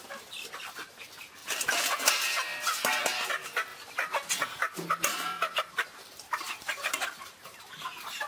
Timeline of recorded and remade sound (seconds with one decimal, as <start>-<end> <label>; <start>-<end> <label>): 0.0-3.7 recorded; 3.7-4.3 remade; 4.3-5.1 recorded; 5.1-7.6 remade; 7.6-8.3 recorded